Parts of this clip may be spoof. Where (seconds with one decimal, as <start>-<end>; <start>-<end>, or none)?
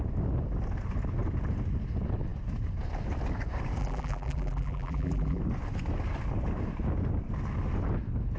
3.8-5.4